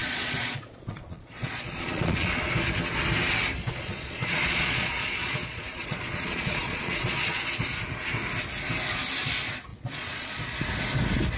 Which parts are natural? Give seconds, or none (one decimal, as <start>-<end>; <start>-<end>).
2.5-3.6; 7.4-9.7; 10.4-11.4